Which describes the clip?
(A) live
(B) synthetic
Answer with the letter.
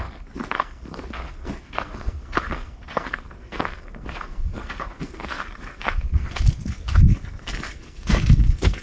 B